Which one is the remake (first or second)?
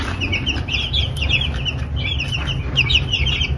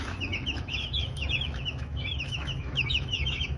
second